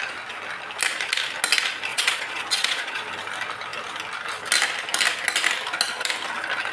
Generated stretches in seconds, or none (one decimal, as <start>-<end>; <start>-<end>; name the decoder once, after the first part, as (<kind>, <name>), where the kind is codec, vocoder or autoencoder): 1.9-3.0 (vocoder, Vocos)